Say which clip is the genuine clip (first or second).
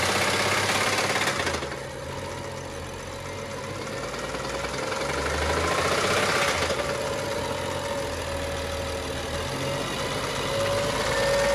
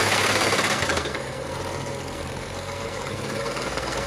first